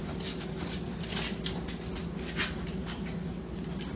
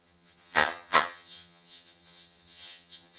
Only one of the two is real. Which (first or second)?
first